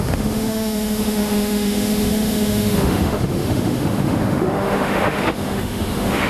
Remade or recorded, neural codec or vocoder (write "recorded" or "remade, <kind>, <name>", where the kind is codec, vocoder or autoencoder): remade, autoencoder, DAC-VAE